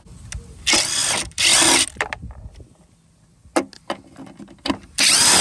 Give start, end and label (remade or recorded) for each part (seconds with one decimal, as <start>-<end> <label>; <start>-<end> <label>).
0.0-5.4 recorded